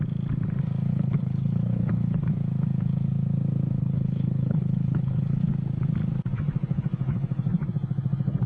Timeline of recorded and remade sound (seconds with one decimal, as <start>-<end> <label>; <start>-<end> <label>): 0.0-0.9 recorded; 0.9-2.2 remade; 2.2-3.8 recorded; 3.8-5.4 remade; 5.4-8.5 recorded

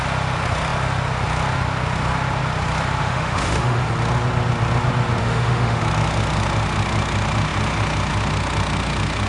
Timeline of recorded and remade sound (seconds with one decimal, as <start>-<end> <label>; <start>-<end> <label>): 0.0-3.0 recorded; 3.0-3.9 remade; 3.9-5.2 recorded; 5.2-5.8 remade; 5.8-9.3 recorded